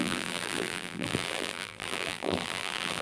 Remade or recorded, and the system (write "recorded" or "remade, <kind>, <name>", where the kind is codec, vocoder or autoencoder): remade, vocoder, BigVGAN v2